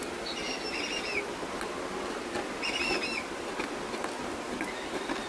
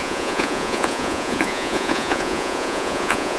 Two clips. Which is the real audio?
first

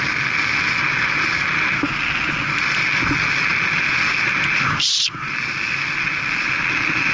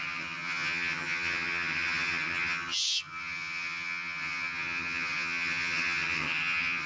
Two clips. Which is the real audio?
first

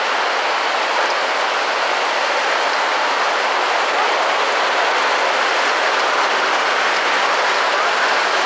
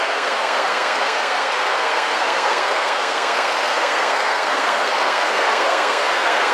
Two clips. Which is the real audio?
first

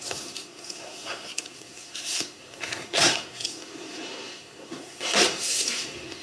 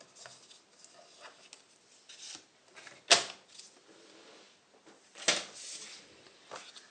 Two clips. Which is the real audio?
second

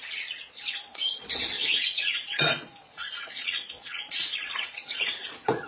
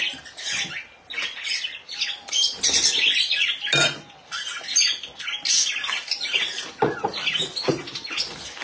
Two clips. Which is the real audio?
second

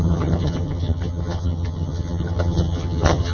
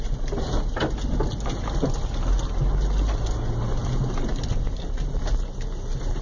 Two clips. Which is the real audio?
second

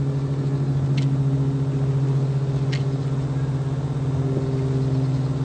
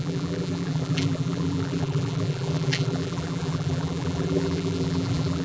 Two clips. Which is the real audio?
first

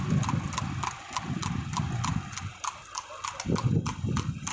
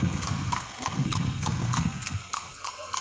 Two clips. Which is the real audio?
first